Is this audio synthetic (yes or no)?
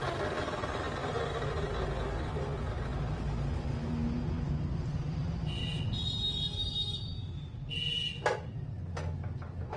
no